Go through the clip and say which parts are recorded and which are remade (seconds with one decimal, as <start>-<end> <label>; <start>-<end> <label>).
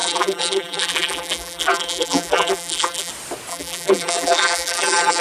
0.0-3.1 remade; 3.1-3.5 recorded; 3.5-5.2 remade